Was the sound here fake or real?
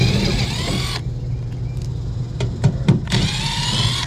real